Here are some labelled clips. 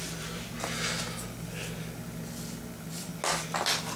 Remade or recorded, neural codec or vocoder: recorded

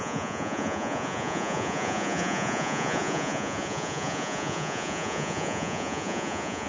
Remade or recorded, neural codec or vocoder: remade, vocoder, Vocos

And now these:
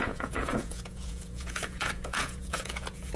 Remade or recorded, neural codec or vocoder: remade, vocoder, Vocos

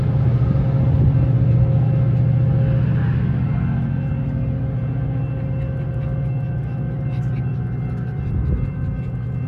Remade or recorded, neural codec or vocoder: recorded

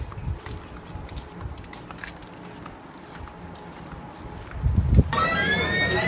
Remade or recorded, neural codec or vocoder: recorded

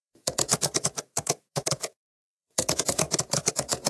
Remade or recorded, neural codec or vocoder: remade, vocoder, Vocos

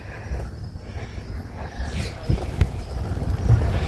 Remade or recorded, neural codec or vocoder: recorded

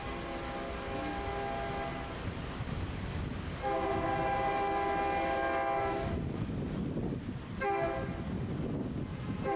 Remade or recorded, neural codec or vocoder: recorded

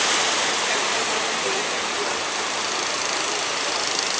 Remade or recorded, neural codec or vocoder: recorded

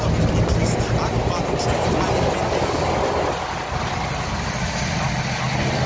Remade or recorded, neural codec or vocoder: recorded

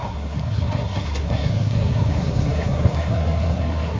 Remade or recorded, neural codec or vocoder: remade, codec, SNAC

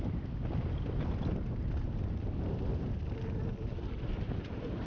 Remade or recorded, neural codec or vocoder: recorded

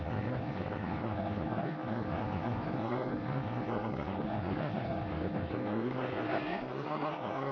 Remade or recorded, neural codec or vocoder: remade, codec, SNAC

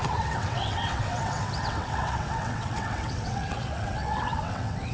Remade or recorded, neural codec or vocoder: remade, vocoder, WaveNeXt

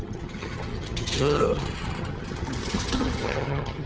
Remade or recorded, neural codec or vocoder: remade, vocoder, HiFi-GAN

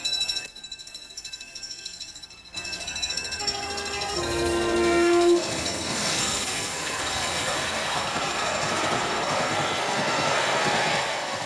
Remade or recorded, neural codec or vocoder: remade, codec, SNAC